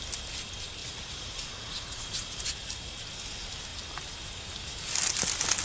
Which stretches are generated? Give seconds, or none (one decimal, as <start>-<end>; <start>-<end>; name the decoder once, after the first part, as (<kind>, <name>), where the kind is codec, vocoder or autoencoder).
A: 0.8-2.4 (vocoder, Vocos)